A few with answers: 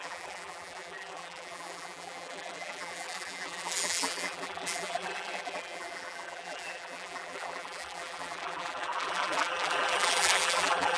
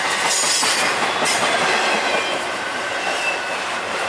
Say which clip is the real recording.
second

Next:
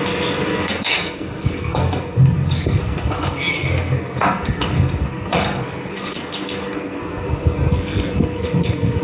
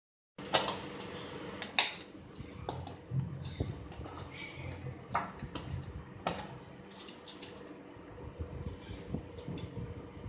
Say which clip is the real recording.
second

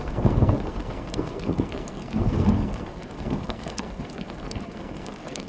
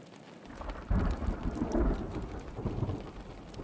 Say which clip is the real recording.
second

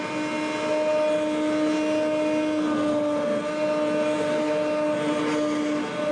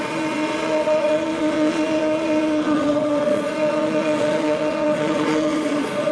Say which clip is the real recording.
first